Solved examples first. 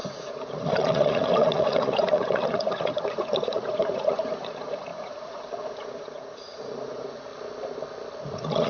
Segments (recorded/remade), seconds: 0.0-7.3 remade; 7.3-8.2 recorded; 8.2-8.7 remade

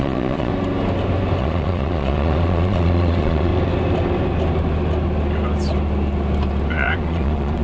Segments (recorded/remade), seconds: 0.0-0.5 remade; 0.5-1.4 recorded; 1.4-3.5 remade; 3.5-6.7 recorded; 6.7-7.6 remade

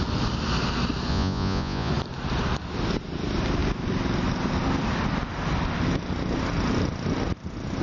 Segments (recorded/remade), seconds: 0.0-1.1 recorded; 1.1-1.9 remade; 1.9-7.8 recorded

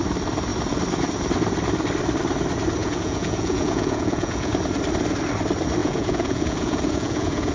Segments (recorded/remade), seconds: 0.0-2.8 recorded; 2.8-4.5 remade; 4.5-5.8 recorded; 5.8-7.5 remade